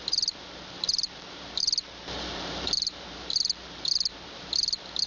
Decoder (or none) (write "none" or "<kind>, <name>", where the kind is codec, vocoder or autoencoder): vocoder, BigVGAN v2